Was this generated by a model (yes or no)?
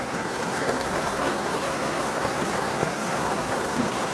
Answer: yes